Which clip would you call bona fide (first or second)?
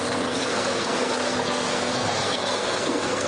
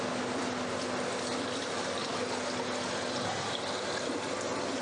second